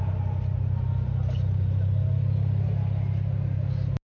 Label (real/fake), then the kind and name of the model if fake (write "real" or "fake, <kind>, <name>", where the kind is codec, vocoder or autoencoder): real